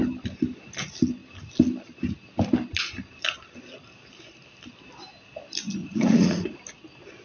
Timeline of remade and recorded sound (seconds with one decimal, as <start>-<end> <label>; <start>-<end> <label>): 0.0-5.8 recorded; 5.8-6.6 remade; 6.6-7.2 recorded